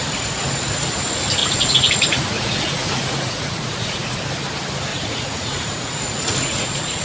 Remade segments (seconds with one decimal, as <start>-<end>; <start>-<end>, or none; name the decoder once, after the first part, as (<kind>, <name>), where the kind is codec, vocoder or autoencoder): 1.4-4.2 (vocoder, Vocos); 4.9-7.0